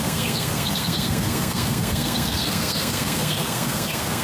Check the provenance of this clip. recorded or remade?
remade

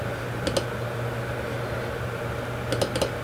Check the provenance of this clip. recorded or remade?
recorded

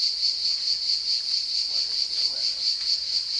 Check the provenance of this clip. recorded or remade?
recorded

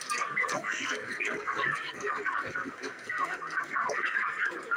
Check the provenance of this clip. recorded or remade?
remade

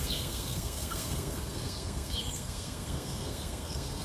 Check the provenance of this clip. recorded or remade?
remade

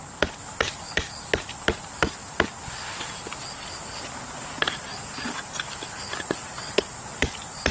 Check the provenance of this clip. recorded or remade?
recorded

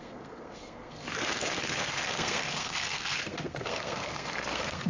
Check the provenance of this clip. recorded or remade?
remade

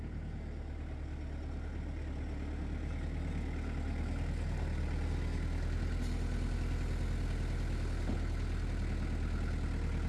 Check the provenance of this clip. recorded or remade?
recorded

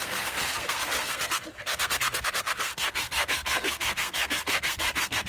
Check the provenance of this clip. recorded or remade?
remade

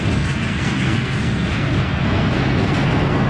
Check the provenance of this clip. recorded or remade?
remade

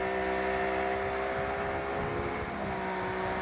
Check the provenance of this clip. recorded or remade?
recorded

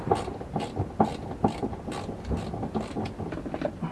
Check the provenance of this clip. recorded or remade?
recorded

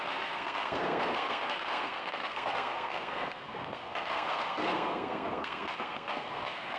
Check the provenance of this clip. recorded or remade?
remade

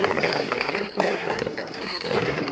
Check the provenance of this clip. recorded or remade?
remade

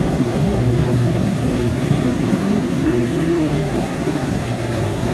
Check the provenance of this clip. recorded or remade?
remade